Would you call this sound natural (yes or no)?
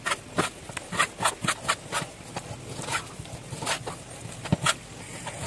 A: yes